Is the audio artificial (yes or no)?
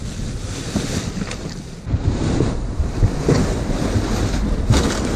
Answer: no